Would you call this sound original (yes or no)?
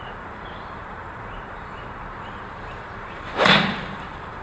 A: no